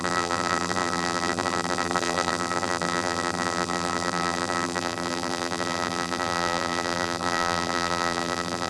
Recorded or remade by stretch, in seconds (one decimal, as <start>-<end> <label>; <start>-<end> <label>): 0.0-8.7 remade